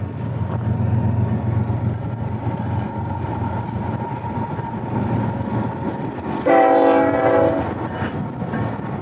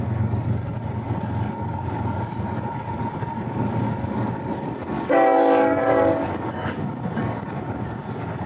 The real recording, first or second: first